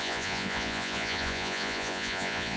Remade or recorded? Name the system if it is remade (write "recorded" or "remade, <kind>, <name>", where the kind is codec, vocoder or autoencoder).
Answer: remade, vocoder, Vocos